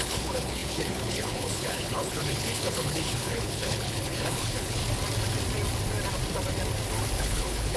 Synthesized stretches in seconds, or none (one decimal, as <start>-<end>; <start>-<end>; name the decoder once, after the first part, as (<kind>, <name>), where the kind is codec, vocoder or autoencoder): 0.0-4.8 (codec, HILCodec); 7.2-7.8